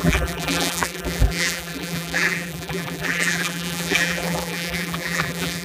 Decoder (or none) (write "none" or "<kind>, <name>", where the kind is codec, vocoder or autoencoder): vocoder, BigVGAN v2